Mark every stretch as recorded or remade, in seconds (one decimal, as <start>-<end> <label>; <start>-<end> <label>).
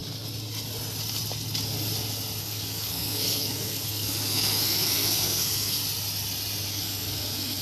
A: 0.0-2.4 recorded; 2.4-5.8 remade; 5.8-6.7 recorded; 6.7-7.6 remade